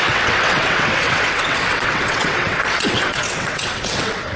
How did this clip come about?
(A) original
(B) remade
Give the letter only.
B